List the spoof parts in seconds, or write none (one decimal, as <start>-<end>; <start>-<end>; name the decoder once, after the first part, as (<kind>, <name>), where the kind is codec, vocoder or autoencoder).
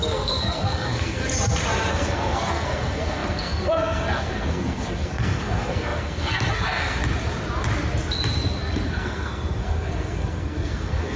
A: 0.0-1.2 (codec, SNAC); 1.9-7.0; 8.9-11.2